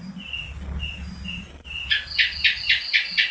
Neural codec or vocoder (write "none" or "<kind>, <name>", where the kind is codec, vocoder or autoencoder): none